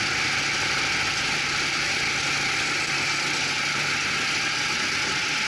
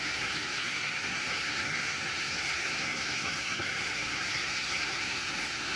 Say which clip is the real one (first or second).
first